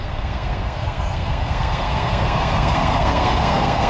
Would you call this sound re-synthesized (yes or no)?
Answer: yes